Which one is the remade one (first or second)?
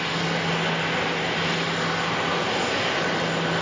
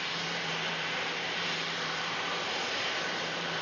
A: second